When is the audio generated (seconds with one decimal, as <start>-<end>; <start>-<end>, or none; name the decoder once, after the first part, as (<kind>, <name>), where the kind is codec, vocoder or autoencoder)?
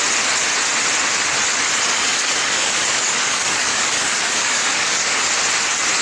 1.9-5.3 (codec, DAC)